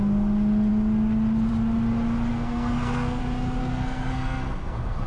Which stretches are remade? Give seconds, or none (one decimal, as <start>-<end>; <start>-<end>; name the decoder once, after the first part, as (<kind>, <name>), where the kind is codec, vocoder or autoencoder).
2.3-3.2 (codec, SNAC); 3.6-5.1